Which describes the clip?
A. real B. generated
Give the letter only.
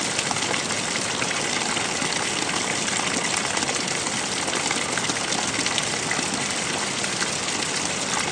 A